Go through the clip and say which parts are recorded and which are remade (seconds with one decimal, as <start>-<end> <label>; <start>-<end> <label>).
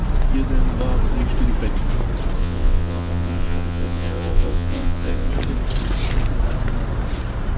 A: 0.0-2.4 recorded; 2.4-5.3 remade; 5.3-7.6 recorded